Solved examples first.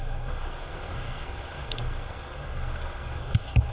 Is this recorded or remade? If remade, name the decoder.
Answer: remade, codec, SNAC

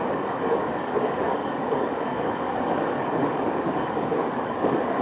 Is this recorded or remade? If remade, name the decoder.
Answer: remade, codec, DAC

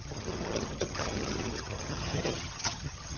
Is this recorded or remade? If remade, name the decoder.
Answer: remade, vocoder, HiFi-GAN